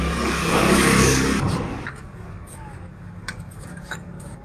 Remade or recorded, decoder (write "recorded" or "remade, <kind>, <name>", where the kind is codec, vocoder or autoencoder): remade, codec, DAC